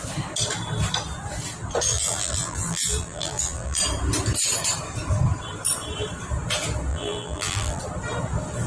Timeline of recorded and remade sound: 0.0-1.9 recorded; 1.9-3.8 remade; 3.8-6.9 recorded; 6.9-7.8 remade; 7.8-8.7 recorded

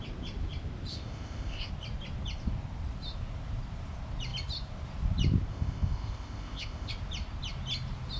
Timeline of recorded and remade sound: 0.0-0.9 recorded; 0.9-1.7 remade; 1.7-5.5 recorded; 5.5-6.9 remade; 6.9-8.2 recorded